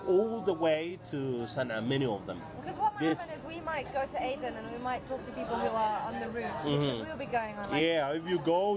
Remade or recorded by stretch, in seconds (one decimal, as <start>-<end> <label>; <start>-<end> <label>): 0.0-8.8 recorded